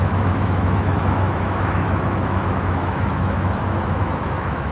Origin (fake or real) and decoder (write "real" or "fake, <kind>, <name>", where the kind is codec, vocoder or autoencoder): fake, autoencoder, DAC-VAE